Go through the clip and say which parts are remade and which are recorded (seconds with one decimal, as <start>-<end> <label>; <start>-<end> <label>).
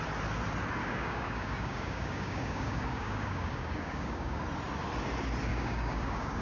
0.0-0.8 recorded; 0.8-4.4 remade; 4.4-5.5 recorded; 5.5-6.4 remade